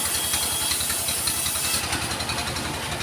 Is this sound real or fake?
real